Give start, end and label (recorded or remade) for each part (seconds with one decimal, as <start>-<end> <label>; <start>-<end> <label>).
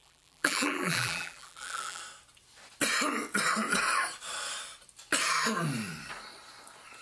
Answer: 0.0-2.0 remade; 2.0-7.0 recorded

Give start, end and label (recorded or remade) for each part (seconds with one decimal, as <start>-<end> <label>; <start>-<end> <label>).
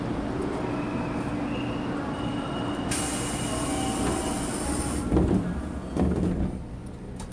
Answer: 0.0-7.3 recorded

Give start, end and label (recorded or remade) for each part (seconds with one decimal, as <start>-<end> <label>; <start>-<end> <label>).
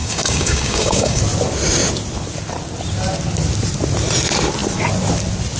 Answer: 0.0-1.2 remade; 1.2-5.6 recorded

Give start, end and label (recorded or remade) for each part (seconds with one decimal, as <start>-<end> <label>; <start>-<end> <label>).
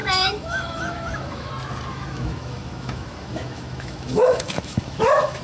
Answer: 0.0-1.5 remade; 1.5-1.9 recorded; 1.9-5.4 remade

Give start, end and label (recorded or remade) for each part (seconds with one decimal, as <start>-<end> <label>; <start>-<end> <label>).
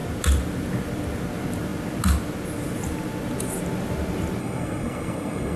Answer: 0.0-4.4 recorded; 4.4-5.6 remade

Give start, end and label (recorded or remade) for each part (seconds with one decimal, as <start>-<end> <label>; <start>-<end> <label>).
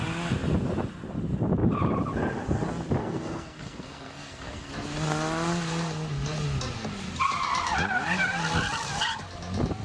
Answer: 0.0-3.0 recorded; 3.0-4.7 remade; 4.7-9.8 recorded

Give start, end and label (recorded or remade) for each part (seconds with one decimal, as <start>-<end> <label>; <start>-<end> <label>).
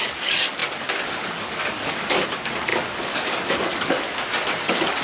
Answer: 0.0-4.1 remade; 4.1-4.6 recorded; 4.6-5.0 remade